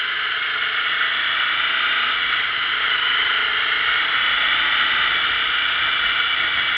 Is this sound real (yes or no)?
yes